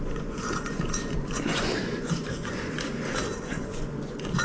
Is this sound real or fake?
fake